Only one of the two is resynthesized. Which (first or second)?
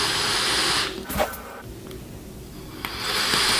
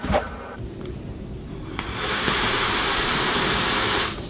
second